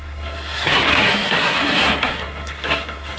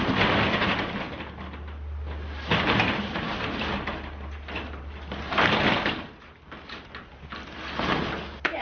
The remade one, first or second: first